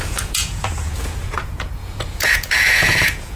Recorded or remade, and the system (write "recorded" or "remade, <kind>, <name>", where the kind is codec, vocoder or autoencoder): remade, vocoder, Vocos